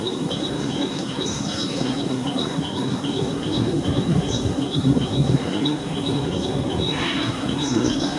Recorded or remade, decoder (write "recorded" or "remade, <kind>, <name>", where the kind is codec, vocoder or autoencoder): remade, codec, SNAC